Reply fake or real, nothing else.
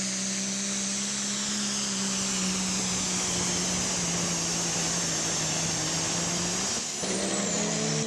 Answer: real